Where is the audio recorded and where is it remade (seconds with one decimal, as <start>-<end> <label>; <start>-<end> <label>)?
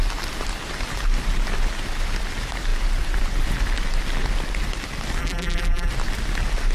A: 0.0-5.2 recorded; 5.2-5.9 remade; 5.9-6.7 recorded